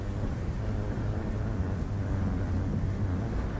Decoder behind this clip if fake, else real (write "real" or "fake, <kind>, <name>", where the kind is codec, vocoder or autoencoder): real